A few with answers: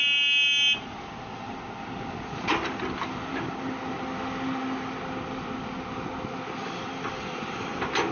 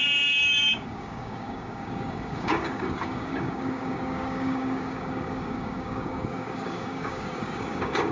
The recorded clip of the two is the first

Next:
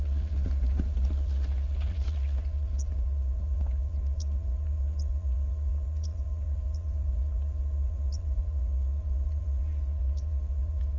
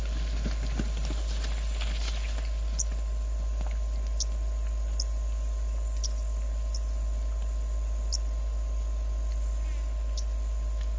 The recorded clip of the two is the second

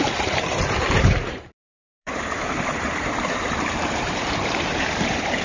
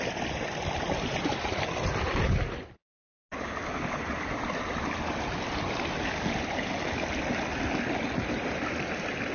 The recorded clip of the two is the second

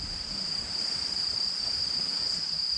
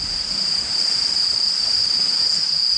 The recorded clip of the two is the second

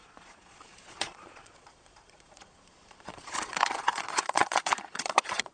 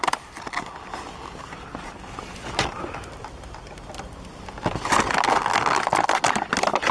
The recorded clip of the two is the second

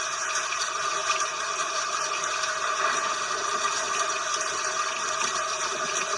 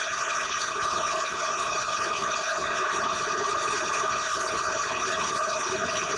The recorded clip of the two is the first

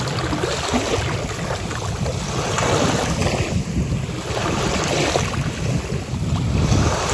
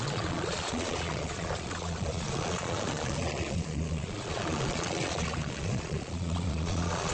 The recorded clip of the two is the first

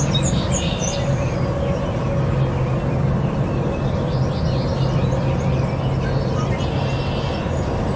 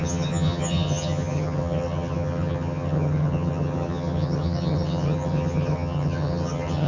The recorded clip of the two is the first